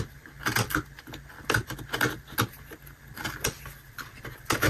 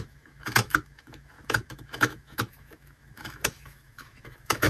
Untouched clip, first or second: first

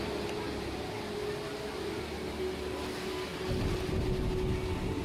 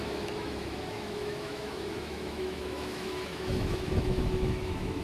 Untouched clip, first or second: first